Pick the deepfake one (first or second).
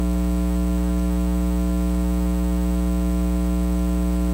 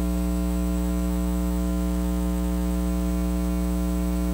second